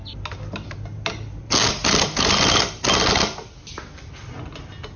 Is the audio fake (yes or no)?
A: no